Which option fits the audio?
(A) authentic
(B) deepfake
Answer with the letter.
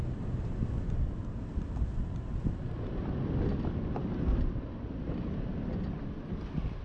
B